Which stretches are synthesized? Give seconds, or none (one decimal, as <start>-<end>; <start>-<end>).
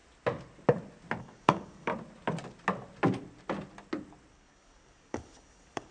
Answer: 1.2-1.9; 4.3-5.9